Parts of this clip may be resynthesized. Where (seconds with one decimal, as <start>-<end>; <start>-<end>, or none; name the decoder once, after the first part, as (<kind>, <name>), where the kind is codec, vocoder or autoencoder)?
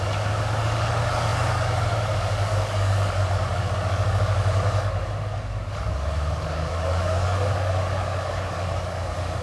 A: 0.0-9.4 (codec, DAC)